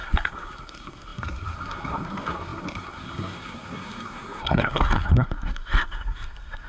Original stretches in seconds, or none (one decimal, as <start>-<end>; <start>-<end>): none